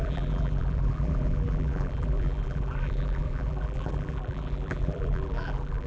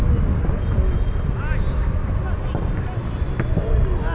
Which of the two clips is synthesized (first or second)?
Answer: first